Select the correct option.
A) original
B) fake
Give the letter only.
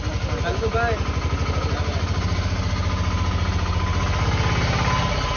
A